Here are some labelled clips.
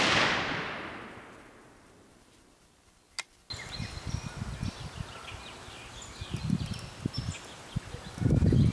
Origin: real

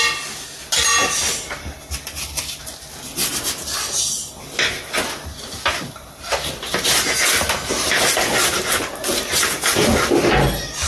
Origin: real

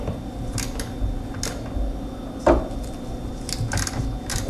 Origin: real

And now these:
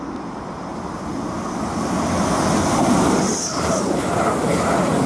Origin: real